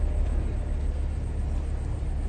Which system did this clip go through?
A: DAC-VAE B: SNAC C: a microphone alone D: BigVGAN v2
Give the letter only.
C